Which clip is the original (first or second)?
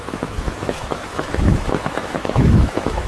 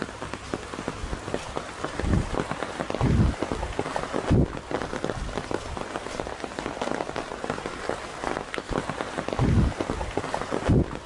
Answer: second